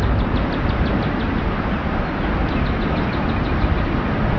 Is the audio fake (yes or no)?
no